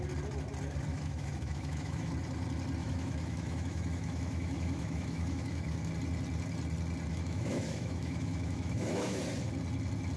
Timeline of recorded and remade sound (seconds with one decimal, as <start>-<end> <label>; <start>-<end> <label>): 0.0-0.9 recorded; 0.9-2.1 remade; 2.1-2.8 recorded; 2.8-5.9 remade; 5.9-7.1 recorded; 7.1-9.2 remade; 9.2-10.2 recorded